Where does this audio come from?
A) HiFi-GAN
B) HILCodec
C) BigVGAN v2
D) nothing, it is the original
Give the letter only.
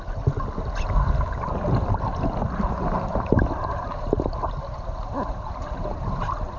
D